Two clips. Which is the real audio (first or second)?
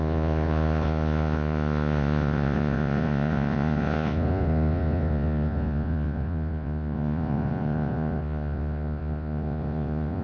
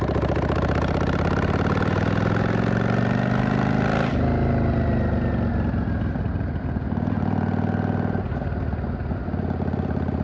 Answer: second